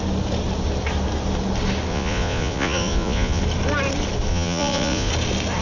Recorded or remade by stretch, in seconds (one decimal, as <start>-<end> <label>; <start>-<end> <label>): 0.0-1.9 recorded; 1.9-3.4 remade; 3.4-4.3 recorded; 4.3-5.1 remade; 5.1-5.6 recorded